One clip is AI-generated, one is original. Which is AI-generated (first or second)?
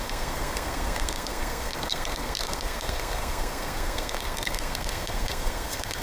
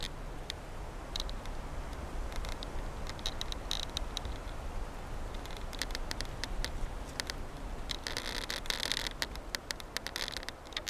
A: first